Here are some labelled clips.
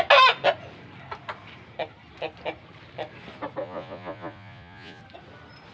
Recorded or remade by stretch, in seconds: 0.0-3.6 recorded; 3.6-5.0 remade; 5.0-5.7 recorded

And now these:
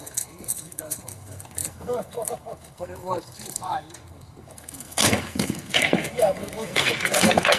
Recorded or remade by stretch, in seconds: 0.0-7.6 remade

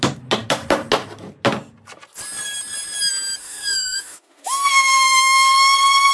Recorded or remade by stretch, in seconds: 0.0-3.4 recorded; 3.4-5.5 remade; 5.5-6.1 recorded